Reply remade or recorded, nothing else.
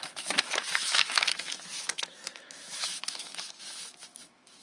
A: remade